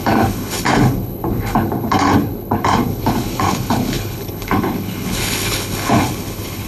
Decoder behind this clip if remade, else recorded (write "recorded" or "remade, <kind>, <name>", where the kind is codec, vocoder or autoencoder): remade, codec, HILCodec